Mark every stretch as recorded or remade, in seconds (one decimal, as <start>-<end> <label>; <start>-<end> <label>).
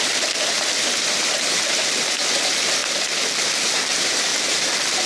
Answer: 0.0-2.8 remade; 2.8-3.4 recorded; 3.4-4.3 remade; 4.3-5.1 recorded